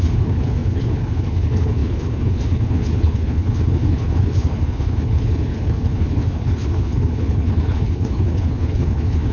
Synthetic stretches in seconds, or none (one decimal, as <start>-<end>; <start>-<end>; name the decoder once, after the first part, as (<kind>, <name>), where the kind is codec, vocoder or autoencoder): 0.0-9.3 (codec, HILCodec)